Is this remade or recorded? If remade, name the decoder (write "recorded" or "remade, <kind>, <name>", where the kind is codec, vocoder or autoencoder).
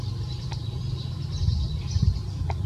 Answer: recorded